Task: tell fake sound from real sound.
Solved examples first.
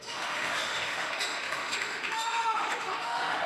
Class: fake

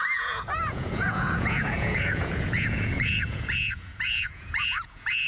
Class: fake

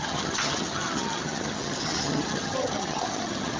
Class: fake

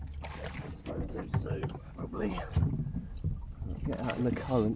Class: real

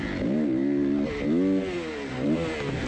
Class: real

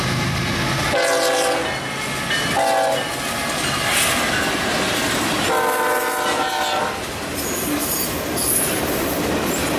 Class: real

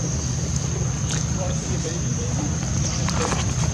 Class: fake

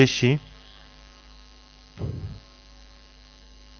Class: fake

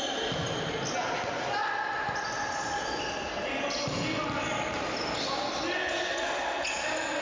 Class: real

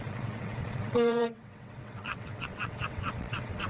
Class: fake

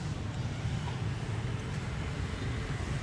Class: real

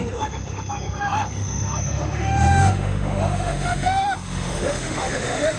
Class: fake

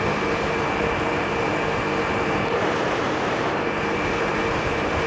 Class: fake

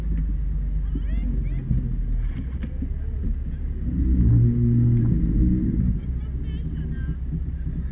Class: real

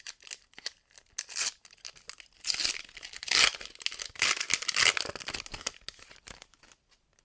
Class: real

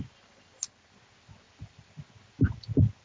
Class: real